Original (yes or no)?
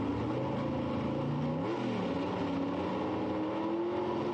yes